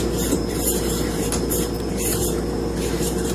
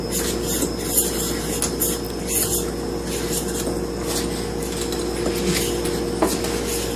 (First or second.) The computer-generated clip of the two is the first